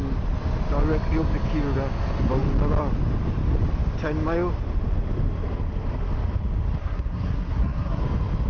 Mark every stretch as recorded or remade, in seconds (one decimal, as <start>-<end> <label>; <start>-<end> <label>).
0.0-6.8 recorded; 6.8-8.0 remade; 8.0-8.5 recorded